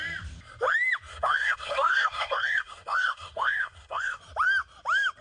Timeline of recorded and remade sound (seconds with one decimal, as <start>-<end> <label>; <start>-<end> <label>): 0.0-1.1 recorded; 1.1-4.2 remade; 4.2-5.2 recorded